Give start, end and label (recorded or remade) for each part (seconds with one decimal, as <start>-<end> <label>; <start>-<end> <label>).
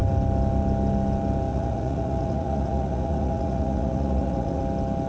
0.0-1.5 recorded; 1.5-4.6 remade; 4.6-5.1 recorded